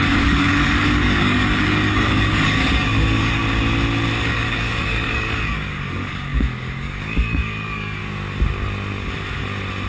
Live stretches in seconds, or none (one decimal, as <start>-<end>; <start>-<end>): 3.4-4.2; 8.0-9.9